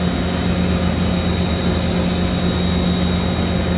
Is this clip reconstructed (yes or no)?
no